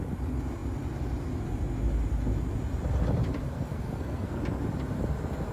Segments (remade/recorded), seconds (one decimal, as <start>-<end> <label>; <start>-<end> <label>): 0.0-3.4 recorded; 3.4-4.4 remade; 4.4-5.5 recorded